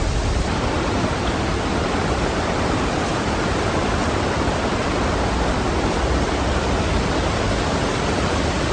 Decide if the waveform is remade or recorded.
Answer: recorded